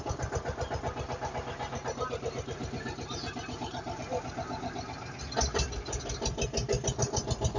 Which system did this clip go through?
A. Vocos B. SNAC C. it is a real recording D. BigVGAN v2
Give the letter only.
C